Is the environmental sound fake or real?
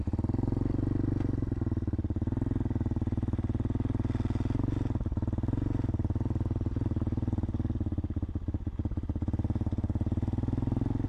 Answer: real